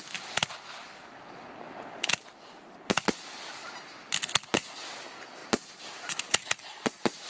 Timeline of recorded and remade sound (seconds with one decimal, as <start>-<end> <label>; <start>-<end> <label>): 0.0-7.3 recorded